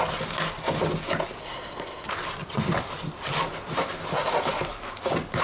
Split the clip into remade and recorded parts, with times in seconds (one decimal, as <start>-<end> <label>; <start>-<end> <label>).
0.0-1.4 recorded; 1.4-2.1 remade; 2.1-5.4 recorded